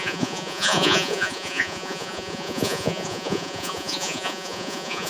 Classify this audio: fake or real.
fake